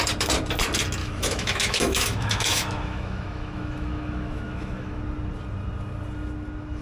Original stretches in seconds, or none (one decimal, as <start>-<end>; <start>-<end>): 0.0-1.0; 5.0-6.8